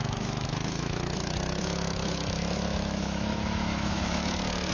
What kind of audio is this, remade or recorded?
remade